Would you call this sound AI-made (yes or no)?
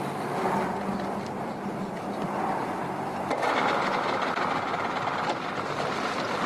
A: no